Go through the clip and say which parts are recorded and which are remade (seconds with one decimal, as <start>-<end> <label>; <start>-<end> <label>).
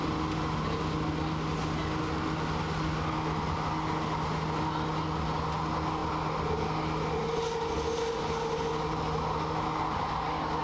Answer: 0.0-10.6 recorded